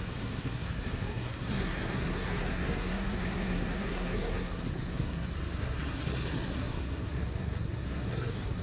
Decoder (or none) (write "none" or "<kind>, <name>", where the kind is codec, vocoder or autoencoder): codec, SNAC